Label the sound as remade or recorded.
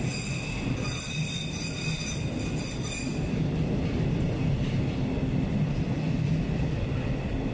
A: recorded